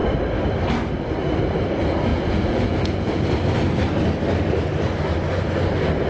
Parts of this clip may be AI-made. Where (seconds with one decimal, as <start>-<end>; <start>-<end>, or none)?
2.1-3.2